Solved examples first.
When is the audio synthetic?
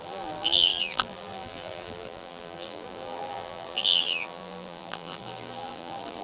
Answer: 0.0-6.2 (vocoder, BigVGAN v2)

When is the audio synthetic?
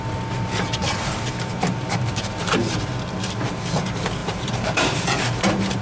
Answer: 0.8-2.2 (vocoder, BigVGAN v2); 4.2-5.8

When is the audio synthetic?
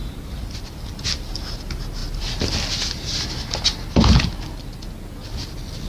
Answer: 0.0-0.8 (vocoder, BigVGAN v2)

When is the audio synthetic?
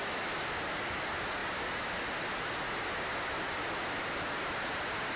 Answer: none